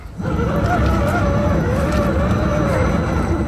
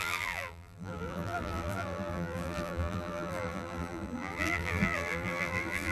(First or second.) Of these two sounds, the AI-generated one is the second